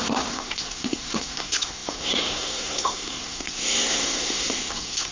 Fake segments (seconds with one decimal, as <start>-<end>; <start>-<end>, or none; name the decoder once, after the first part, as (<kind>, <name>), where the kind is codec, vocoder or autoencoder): 0.0-5.1 (codec, SNAC)